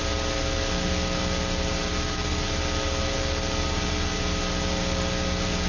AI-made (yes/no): no